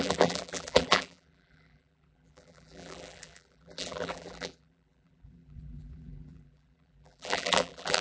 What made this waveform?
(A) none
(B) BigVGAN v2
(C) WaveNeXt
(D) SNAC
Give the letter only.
B